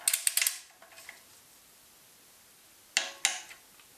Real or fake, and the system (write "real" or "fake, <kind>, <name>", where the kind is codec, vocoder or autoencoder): real